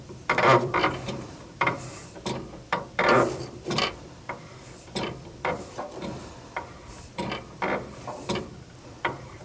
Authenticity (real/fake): fake